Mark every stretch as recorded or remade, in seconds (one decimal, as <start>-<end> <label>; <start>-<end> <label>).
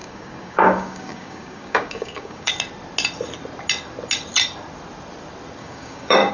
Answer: 0.0-2.5 remade; 2.5-5.6 recorded; 5.6-6.3 remade